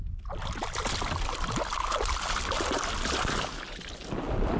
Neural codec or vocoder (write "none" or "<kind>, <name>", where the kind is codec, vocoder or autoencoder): none